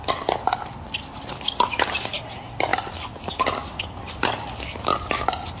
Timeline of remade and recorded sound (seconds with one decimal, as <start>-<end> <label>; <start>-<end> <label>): 0.0-5.6 recorded